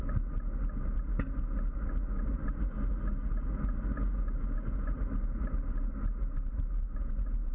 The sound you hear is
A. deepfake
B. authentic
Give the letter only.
B